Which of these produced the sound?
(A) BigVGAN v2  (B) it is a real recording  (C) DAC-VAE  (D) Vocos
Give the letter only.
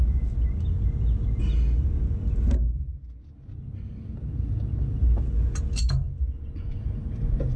B